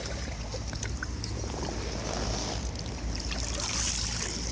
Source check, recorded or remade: recorded